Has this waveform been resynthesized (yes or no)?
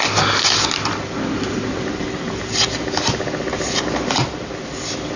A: no